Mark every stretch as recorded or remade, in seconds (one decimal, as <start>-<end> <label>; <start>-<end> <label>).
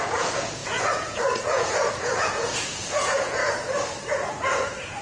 0.0-3.4 remade; 3.4-4.4 recorded; 4.4-5.0 remade